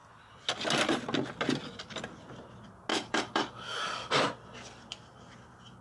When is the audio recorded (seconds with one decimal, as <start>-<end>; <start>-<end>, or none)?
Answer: 0.0-2.9; 4.1-5.8